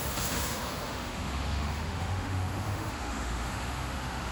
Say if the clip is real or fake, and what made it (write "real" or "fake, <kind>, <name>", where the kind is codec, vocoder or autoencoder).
fake, autoencoder, DAC-VAE